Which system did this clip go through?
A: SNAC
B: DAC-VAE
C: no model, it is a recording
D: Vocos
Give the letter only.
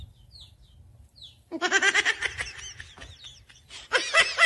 C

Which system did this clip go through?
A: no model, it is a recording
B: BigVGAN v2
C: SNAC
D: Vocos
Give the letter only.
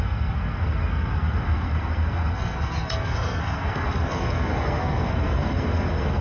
C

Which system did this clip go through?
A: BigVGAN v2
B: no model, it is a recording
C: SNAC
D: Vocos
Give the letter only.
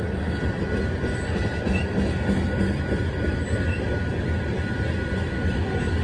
B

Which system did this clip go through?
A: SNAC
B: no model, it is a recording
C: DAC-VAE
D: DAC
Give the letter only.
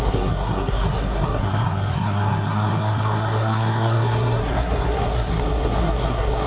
A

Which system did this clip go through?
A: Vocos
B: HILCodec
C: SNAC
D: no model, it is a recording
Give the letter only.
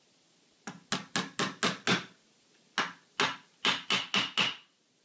D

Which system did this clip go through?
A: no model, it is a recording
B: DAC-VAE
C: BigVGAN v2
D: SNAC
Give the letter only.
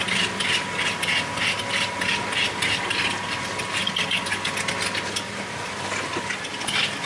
A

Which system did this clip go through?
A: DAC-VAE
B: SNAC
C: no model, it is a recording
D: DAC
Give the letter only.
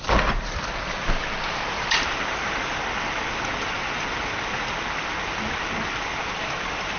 C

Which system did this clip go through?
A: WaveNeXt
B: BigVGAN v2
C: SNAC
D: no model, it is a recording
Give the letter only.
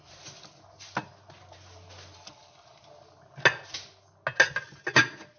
D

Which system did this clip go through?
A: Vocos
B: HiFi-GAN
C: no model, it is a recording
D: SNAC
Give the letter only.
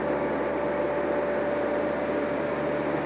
C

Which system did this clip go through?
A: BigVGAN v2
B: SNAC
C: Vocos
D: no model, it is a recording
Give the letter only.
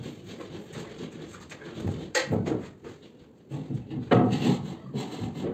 D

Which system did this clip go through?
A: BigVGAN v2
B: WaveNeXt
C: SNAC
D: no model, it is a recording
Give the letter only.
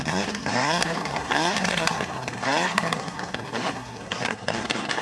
C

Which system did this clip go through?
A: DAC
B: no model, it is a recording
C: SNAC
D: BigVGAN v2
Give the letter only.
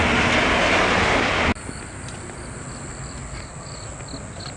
B